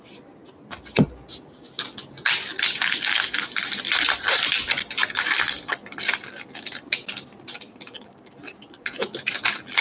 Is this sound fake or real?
real